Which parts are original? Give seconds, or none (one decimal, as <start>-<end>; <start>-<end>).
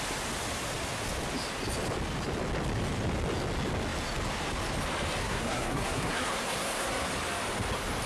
0.0-5.2; 7.1-8.1